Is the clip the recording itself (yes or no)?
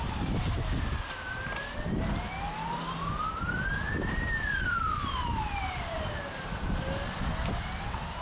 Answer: yes